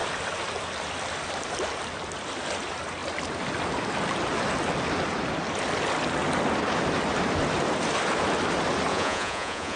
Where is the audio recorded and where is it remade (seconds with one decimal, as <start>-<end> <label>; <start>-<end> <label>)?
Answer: 0.0-8.9 recorded; 8.9-9.8 remade